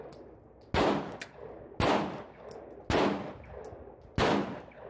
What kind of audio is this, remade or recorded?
recorded